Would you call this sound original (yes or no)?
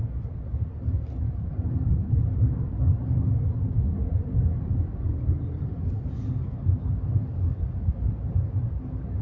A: yes